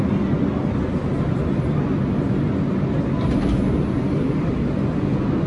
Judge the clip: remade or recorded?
recorded